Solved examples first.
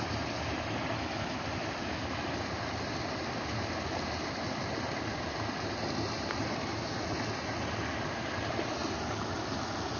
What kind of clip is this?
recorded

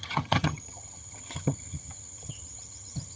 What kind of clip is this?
remade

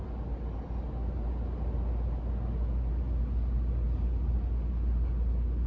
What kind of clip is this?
recorded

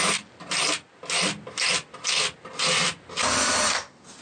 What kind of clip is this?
recorded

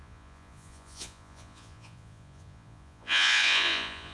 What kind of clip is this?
remade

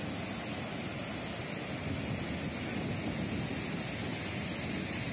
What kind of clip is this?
recorded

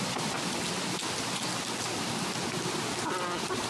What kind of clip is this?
recorded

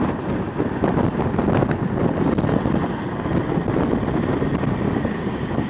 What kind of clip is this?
recorded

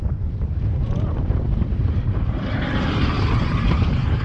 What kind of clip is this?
remade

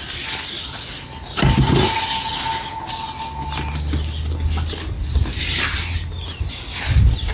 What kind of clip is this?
recorded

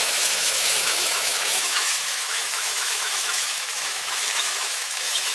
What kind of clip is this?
remade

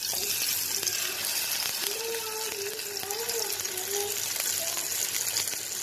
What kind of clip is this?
recorded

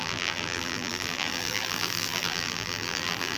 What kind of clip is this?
remade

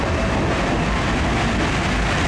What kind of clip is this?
recorded